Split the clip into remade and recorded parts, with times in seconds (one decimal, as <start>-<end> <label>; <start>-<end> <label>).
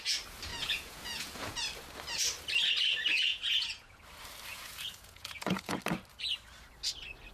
0.0-0.5 recorded; 0.5-1.6 remade; 1.6-3.1 recorded; 3.1-4.0 remade; 4.0-4.5 recorded; 4.5-5.8 remade; 5.8-7.3 recorded